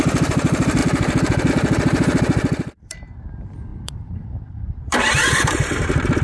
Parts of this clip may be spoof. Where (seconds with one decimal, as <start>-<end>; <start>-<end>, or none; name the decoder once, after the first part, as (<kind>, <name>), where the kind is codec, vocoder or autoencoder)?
0.0-6.2 (vocoder, BigVGAN v2)